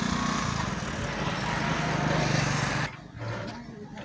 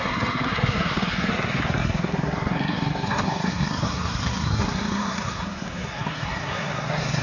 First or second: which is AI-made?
second